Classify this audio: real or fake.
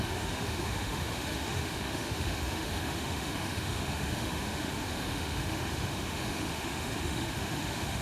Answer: fake